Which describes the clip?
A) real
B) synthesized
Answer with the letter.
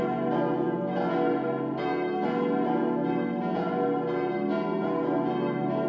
A